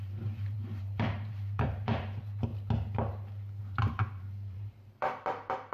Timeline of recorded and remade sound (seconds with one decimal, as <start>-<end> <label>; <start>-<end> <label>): 0.0-2.5 remade; 2.5-3.6 recorded; 3.6-5.7 remade